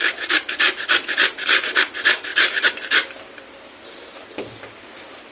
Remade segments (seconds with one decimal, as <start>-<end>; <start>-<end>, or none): none